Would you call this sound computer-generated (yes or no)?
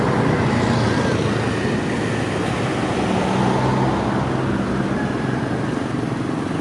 no